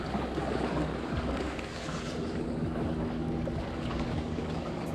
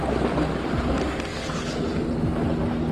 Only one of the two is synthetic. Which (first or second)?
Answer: first